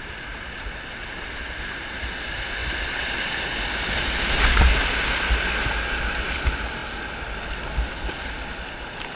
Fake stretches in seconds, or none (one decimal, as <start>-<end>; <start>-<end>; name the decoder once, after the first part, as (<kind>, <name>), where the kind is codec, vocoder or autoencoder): none